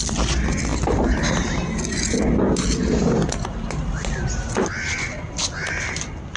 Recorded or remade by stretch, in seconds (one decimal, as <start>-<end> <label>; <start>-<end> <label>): 0.0-6.4 recorded